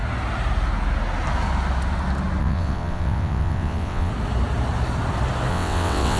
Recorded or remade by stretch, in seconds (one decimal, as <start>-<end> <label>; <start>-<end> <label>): 0.0-2.4 recorded; 2.4-4.1 remade; 4.1-5.5 recorded; 5.5-6.2 remade